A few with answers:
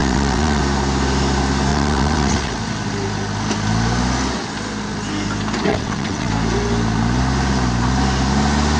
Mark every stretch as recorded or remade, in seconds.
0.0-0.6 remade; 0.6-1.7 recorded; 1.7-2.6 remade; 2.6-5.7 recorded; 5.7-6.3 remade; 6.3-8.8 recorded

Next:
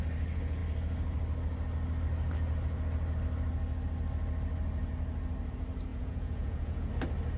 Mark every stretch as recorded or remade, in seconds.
0.0-5.9 recorded; 5.9-6.9 remade; 6.9-7.4 recorded